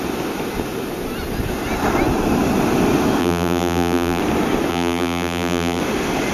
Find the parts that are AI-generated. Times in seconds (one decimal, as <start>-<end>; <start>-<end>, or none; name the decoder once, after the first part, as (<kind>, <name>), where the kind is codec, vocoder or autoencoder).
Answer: 3.2-4.2 (vocoder, BigVGAN v2); 4.7-5.8